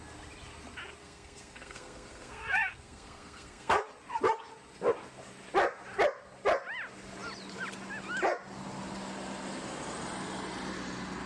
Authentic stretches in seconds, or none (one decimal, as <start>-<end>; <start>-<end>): 0.0-1.0; 3.9-11.3